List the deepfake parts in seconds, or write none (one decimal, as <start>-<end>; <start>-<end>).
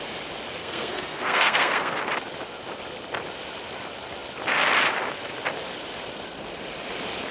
0.6-2.0